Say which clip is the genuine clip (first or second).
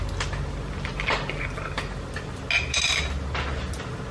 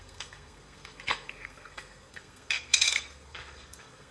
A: first